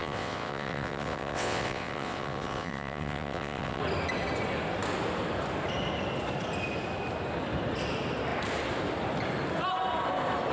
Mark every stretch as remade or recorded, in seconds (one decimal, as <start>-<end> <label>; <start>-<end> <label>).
0.0-3.8 remade; 3.8-10.5 recorded